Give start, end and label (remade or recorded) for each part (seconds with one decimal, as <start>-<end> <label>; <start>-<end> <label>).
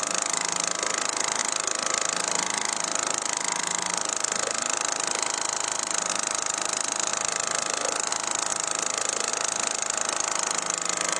0.0-11.2 recorded